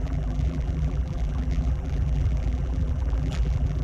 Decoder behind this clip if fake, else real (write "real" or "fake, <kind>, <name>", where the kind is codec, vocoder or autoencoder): fake, vocoder, BigVGAN v2